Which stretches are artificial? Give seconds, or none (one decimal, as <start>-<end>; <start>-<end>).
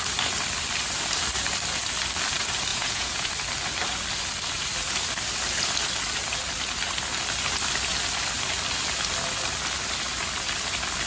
2.7-3.3